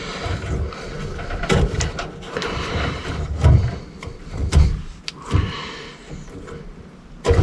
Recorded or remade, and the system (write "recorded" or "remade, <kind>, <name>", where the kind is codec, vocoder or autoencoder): recorded